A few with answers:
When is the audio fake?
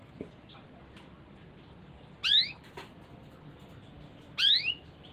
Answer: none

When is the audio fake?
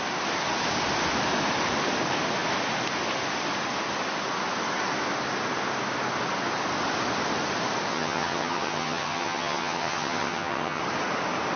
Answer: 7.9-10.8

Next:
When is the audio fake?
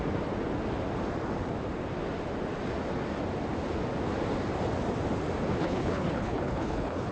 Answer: 5.6-7.1